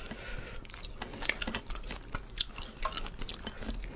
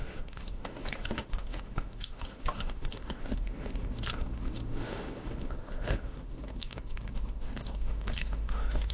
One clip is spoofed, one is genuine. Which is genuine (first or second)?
first